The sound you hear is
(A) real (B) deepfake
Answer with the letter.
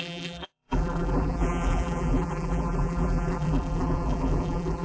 B